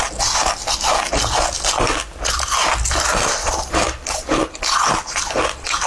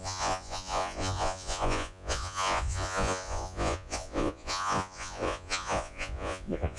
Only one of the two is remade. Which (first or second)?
second